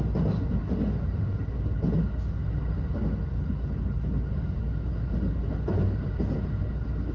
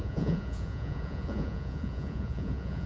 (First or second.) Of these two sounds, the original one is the first